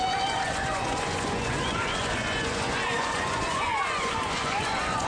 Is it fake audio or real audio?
fake